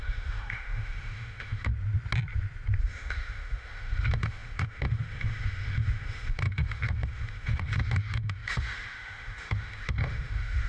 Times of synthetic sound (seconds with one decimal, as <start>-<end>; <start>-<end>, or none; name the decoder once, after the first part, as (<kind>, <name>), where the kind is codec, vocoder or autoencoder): 0.0-1.7 (autoencoder, DAC-VAE); 2.8-10.7